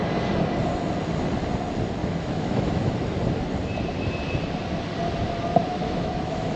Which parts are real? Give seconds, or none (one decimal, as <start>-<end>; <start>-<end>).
0.0-2.0; 2.9-5.6